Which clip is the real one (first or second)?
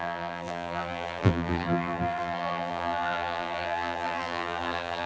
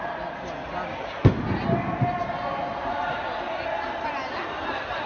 second